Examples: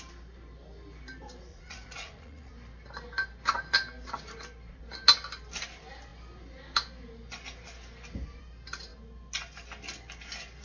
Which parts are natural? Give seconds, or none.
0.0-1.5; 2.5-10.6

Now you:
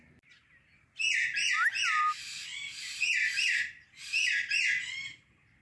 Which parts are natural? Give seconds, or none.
0.0-5.6

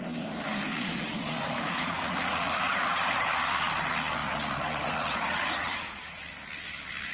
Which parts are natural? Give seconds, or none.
0.0-0.7; 3.3-4.2; 6.2-7.1

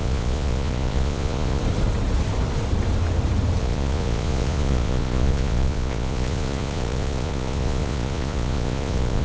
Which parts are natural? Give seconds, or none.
1.6-3.6

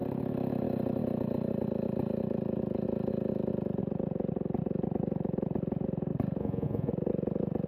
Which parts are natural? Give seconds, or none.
0.0-6.4; 6.9-7.7

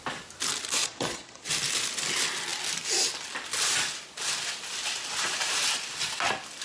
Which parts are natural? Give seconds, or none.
0.0-0.8; 1.5-6.6